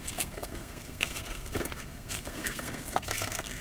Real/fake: fake